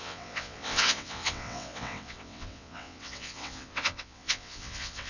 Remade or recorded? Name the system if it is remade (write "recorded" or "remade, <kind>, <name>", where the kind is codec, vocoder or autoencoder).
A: remade, vocoder, WaveNeXt